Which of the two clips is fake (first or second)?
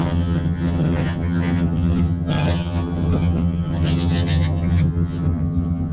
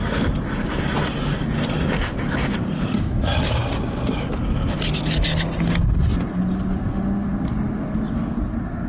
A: first